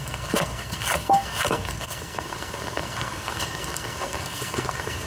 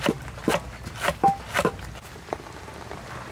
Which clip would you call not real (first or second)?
first